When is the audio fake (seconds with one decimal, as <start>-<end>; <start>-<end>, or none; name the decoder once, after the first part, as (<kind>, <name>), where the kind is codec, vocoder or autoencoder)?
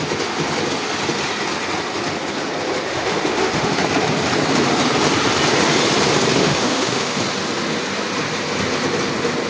2.9-3.8 (autoencoder, DAC-VAE); 6.4-7.2